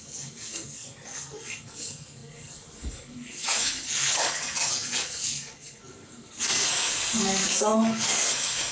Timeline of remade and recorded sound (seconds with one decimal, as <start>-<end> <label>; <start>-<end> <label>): 0.0-8.7 remade